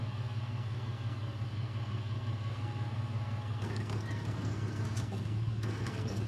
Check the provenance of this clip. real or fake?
fake